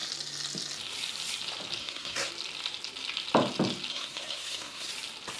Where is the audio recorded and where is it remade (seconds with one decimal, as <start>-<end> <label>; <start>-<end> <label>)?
0.0-1.8 recorded; 1.8-2.3 remade; 2.3-3.9 recorded; 3.9-4.9 remade; 4.9-5.4 recorded